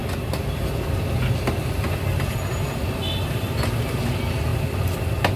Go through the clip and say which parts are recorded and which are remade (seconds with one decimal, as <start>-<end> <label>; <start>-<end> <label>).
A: 0.0-5.4 recorded